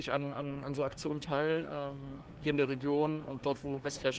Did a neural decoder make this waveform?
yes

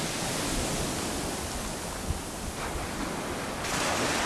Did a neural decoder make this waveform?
no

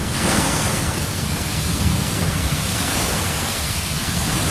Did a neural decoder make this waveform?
yes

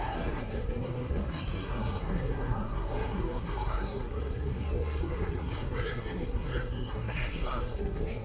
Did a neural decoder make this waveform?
yes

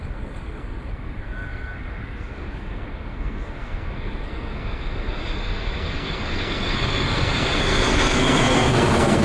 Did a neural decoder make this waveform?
yes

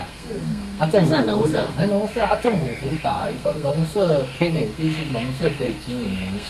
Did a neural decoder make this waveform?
yes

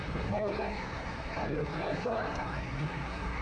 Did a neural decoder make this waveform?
yes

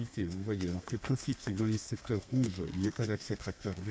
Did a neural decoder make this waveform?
yes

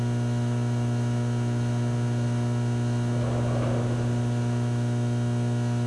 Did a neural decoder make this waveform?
no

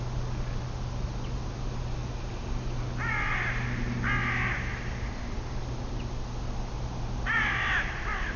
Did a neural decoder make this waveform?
no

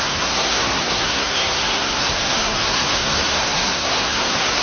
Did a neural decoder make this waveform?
yes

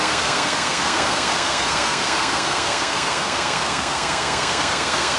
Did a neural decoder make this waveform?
yes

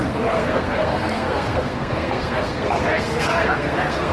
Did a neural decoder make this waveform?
yes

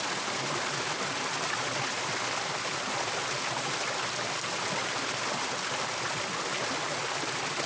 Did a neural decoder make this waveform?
no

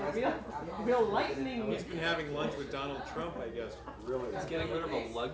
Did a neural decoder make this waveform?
no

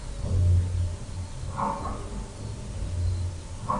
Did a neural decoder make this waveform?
no